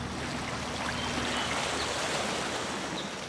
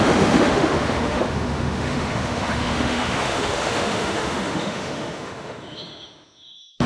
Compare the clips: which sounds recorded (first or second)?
first